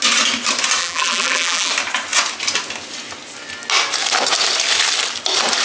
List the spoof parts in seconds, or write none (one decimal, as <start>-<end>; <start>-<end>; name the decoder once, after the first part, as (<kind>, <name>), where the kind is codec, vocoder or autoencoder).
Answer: 0.8-1.7 (vocoder, BigVGAN v2)